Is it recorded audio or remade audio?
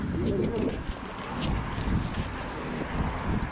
recorded